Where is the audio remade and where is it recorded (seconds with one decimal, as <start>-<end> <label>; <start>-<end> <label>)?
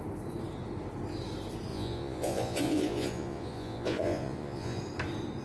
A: 0.0-1.7 recorded; 1.7-4.8 remade; 4.8-5.4 recorded